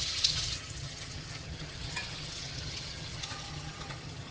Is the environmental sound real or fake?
fake